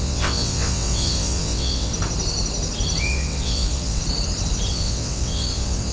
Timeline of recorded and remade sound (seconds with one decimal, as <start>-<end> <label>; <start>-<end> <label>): 0.0-1.9 remade; 1.9-3.0 recorded; 3.0-4.0 remade; 4.0-4.7 recorded; 4.7-5.9 remade